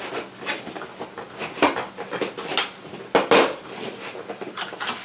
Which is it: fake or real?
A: real